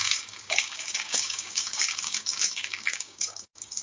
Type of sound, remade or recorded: remade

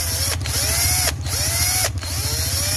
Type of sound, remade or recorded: recorded